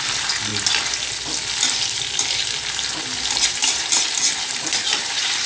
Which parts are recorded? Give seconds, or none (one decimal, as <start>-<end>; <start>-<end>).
0.0-3.6